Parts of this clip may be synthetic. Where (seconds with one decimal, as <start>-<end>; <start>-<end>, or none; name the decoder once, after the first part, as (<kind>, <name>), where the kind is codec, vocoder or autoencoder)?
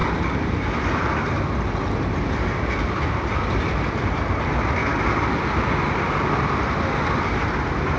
none